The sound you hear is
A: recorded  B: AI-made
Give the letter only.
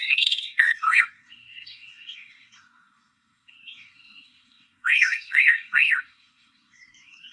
B